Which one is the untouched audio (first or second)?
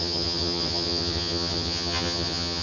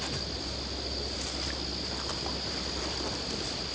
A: second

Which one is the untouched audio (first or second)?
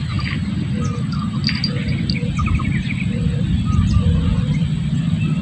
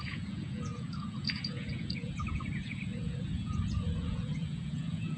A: first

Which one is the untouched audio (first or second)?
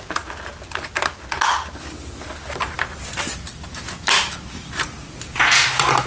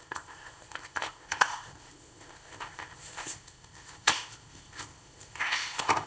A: first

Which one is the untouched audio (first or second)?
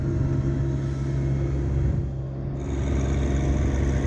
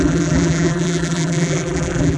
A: first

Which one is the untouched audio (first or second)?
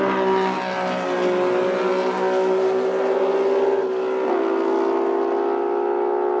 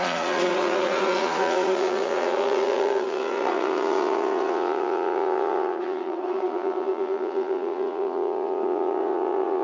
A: first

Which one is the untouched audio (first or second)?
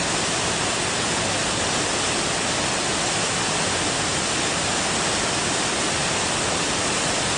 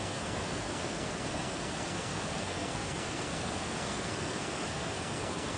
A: first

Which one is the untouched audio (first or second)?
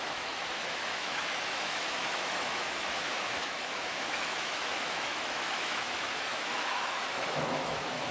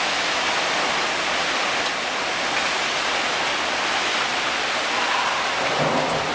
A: second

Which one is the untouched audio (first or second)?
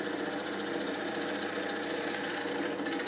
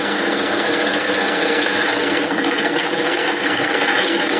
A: first